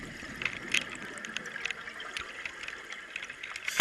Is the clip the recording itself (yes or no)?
yes